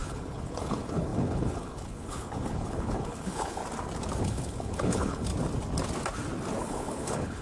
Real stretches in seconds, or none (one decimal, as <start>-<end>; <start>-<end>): 3.6-4.2; 5.3-6.6